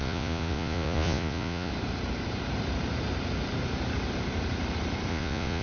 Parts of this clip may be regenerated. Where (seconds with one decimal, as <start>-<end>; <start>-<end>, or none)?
0.0-1.7; 5.1-5.6